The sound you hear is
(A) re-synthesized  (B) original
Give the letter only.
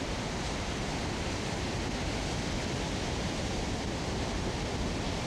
B